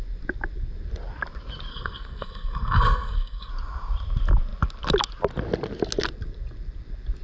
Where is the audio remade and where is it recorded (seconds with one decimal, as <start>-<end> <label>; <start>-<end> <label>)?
0.0-1.7 recorded; 1.7-3.5 remade; 3.5-7.2 recorded